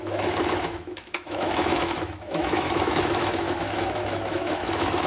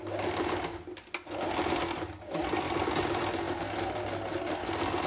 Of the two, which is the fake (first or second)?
first